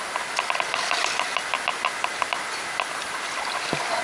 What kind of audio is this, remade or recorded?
recorded